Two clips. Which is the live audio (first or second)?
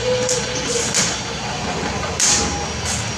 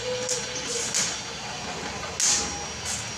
second